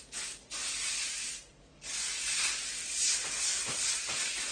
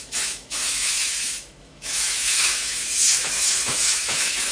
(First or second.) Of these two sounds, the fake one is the second